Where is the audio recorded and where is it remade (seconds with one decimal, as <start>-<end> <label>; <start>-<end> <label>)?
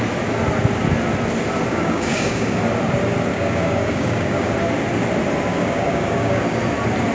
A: 0.0-1.7 recorded; 1.7-2.6 remade; 2.6-3.3 recorded; 3.3-4.5 remade; 4.5-5.5 recorded; 5.5-6.4 remade; 6.4-7.1 recorded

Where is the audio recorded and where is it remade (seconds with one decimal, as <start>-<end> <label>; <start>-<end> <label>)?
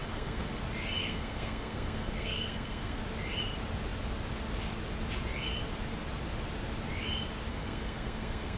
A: 0.0-0.6 remade; 0.6-1.0 recorded; 1.0-3.0 remade; 3.0-7.5 recorded; 7.5-8.6 remade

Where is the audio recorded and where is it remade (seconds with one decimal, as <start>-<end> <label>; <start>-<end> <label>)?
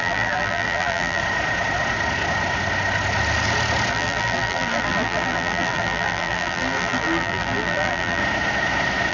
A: 0.0-1.2 remade; 1.2-3.9 recorded; 3.9-8.2 remade; 8.2-9.1 recorded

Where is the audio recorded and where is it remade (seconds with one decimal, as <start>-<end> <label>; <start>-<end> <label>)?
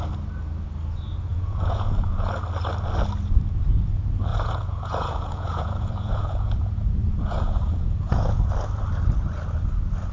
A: 0.0-1.3 recorded; 1.3-2.3 remade; 2.3-4.3 recorded; 4.3-8.5 remade; 8.5-10.1 recorded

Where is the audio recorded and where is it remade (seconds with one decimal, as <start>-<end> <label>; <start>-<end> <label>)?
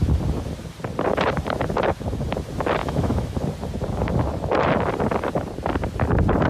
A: 0.0-2.8 recorded; 2.8-3.4 remade; 3.4-6.5 recorded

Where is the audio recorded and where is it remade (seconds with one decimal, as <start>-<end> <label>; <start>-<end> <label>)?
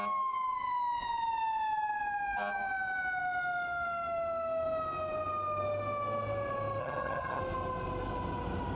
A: 0.0-6.8 recorded; 6.8-7.4 remade; 7.4-8.8 recorded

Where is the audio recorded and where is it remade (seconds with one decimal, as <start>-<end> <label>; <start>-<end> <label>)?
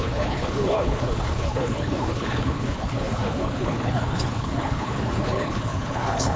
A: 0.0-6.4 remade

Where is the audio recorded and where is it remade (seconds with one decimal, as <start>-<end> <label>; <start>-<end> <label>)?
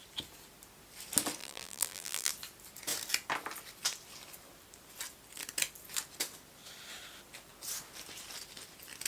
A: 0.0-1.4 recorded; 1.4-2.3 remade; 2.3-9.1 recorded